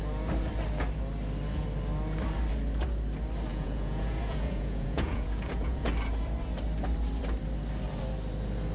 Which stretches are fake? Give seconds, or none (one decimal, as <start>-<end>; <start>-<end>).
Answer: 3.5-5.9